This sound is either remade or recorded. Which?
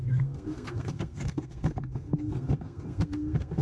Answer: remade